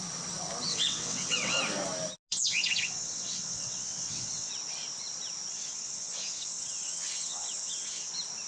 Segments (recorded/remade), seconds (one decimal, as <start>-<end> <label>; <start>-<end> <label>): 0.0-0.7 recorded; 0.7-1.6 remade; 1.6-2.3 recorded; 2.3-4.5 remade; 4.5-5.5 recorded; 5.5-8.1 remade; 8.1-8.5 recorded